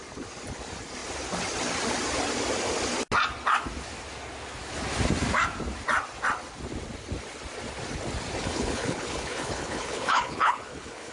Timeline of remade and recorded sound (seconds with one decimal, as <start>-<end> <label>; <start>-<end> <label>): 0.0-8.4 recorded; 8.4-11.1 remade